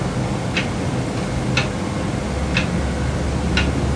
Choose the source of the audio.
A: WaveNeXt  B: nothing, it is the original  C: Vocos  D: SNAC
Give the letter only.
B